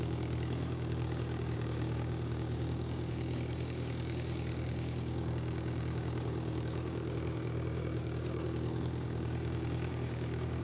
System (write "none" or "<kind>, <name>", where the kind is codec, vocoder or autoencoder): codec, DAC